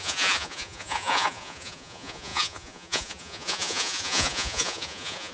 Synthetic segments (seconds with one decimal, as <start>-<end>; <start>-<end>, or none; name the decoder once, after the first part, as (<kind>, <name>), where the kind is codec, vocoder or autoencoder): 0.0-5.3 (vocoder, Vocos)